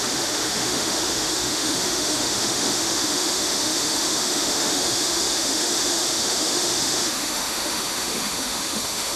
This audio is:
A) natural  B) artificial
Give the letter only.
B